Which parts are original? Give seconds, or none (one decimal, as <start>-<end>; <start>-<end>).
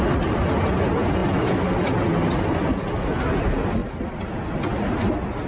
0.0-5.5